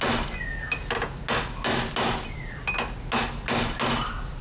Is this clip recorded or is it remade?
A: recorded